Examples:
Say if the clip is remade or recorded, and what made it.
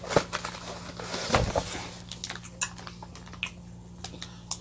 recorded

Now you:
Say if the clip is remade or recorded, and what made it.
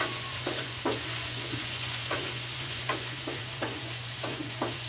remade, vocoder, Vocos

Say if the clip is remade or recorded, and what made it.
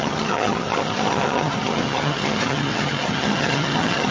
remade, vocoder, HiFi-GAN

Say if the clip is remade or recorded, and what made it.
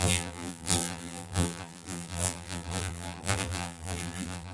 remade, vocoder, BigVGAN v2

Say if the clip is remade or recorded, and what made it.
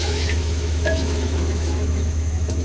remade, autoencoder, DAC-VAE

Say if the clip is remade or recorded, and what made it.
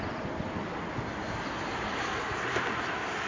recorded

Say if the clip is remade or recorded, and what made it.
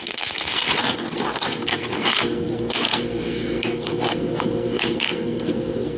remade, codec, SNAC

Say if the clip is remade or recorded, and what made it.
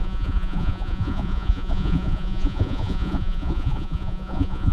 remade, vocoder, Vocos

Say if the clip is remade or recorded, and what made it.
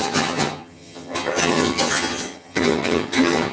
remade, vocoder, HiFi-GAN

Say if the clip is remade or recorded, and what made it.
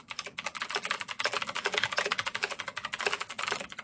remade, vocoder, BigVGAN v2